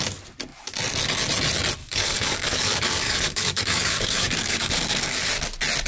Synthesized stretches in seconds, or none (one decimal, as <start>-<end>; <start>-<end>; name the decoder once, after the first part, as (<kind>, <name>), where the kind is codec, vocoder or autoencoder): 1.8-5.3 (codec, DAC)